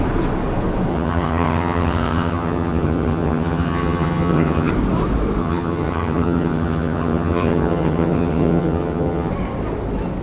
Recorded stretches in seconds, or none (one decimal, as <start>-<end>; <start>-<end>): 0.0-0.9; 4.7-5.4; 9.3-10.2